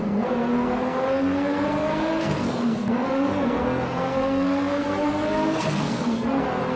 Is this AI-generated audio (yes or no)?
yes